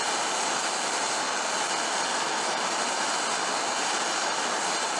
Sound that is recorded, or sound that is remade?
recorded